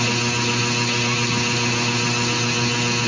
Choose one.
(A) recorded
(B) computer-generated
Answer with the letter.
A